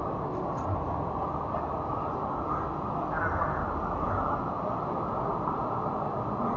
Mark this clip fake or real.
real